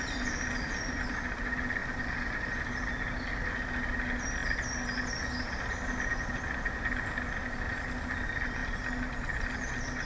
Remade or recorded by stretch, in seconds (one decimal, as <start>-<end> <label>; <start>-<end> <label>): 0.0-10.0 recorded